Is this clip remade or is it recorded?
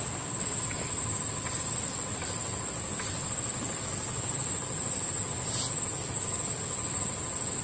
recorded